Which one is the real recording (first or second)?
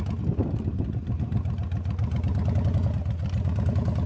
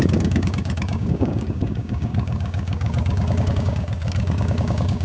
first